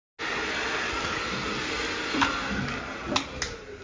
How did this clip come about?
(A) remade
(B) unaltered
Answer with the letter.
B